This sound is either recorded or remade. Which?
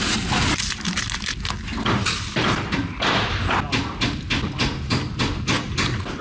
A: recorded